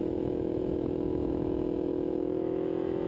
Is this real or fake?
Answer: fake